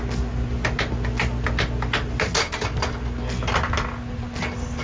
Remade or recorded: recorded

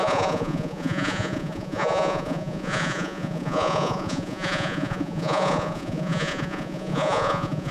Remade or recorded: remade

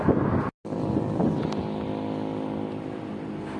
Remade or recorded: recorded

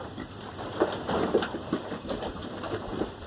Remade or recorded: remade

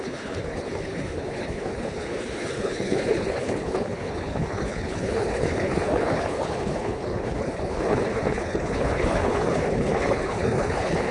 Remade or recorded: remade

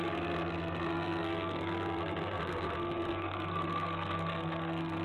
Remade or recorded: remade